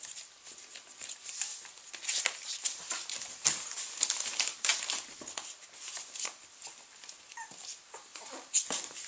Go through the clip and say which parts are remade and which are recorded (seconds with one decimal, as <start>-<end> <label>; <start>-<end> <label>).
0.0-9.1 recorded